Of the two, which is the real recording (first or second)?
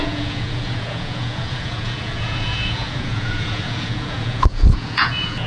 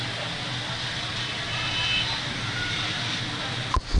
second